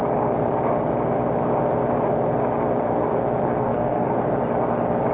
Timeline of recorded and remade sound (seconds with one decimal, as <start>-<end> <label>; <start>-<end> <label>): 0.0-3.6 recorded; 3.6-4.2 remade; 4.2-5.1 recorded

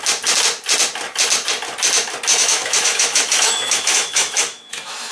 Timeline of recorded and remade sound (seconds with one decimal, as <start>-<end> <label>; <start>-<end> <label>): 0.0-2.3 recorded; 2.3-5.1 remade

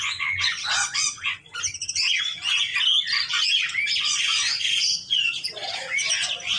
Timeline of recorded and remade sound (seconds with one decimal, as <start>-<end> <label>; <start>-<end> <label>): 0.0-2.7 remade; 2.7-4.0 recorded; 4.0-6.6 remade

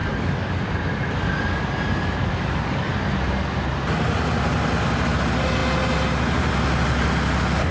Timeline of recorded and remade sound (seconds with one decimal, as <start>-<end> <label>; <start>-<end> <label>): 0.0-0.6 remade; 0.6-2.2 recorded; 2.2-2.9 remade; 2.9-7.7 recorded

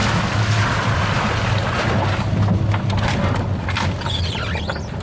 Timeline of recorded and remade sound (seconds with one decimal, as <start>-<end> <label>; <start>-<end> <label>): 0.0-1.5 remade; 1.5-5.0 recorded

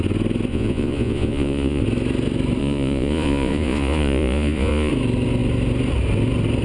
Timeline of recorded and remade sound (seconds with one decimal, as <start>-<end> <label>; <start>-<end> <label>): 0.0-0.5 recorded; 0.5-1.8 remade; 1.8-2.6 recorded; 2.6-4.9 remade; 4.9-6.6 recorded